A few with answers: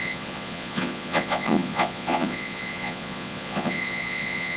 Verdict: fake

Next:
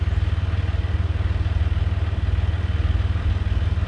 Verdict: real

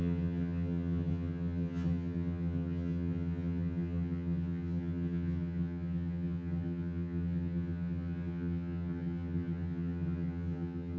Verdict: fake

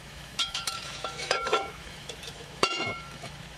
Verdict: fake